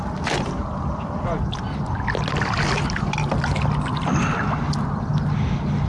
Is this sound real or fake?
real